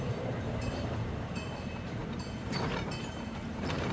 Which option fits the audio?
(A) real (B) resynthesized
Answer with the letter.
B